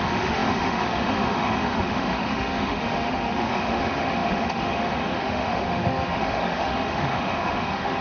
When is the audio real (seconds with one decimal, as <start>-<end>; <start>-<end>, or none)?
none